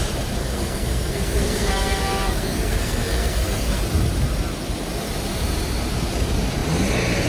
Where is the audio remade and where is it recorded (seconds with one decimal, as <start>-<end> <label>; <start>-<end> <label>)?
0.0-0.4 recorded; 0.4-3.8 remade; 3.8-7.3 recorded